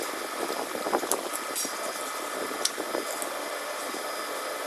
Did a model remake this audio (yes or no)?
no